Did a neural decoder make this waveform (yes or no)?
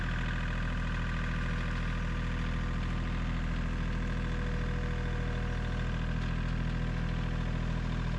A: no